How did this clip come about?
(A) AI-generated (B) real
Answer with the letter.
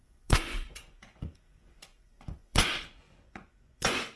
A